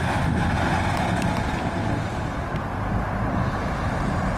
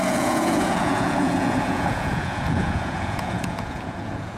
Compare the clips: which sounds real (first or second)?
first